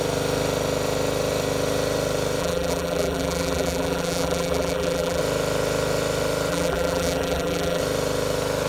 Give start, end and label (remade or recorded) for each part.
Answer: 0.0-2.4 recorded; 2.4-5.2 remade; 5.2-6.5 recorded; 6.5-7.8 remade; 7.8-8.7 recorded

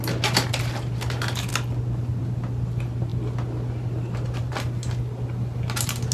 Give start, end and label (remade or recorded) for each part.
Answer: 0.0-6.1 recorded

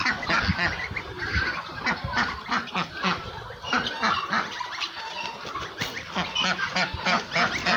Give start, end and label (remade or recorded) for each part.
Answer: 0.0-0.5 recorded; 0.5-5.0 remade; 5.0-7.8 recorded